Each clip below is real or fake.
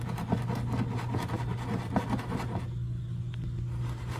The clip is real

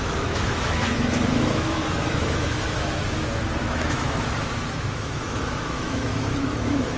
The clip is fake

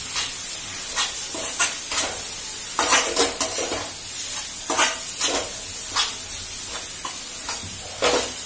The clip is real